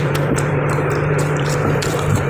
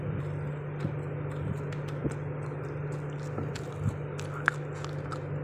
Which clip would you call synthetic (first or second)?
first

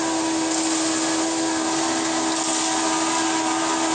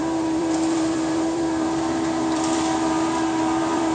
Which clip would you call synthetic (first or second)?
second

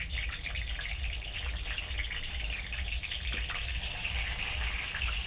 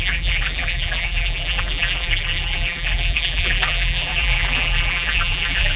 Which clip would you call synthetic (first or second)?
second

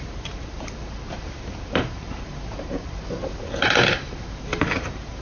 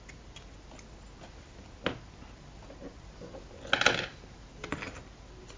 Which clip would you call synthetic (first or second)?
first